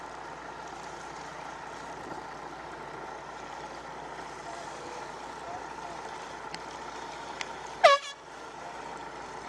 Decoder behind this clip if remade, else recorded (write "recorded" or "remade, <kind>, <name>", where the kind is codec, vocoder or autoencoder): recorded